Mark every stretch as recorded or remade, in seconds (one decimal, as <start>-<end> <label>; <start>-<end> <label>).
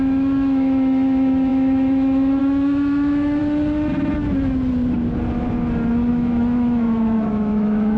0.0-3.4 remade; 3.4-6.1 recorded; 6.1-8.0 remade